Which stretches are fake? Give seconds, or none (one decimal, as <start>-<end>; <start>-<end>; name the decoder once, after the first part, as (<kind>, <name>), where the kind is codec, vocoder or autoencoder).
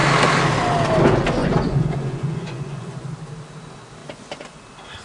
1.4-3.1 (vocoder, Vocos); 4.0-4.6